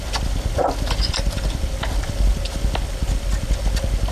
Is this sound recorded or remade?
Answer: recorded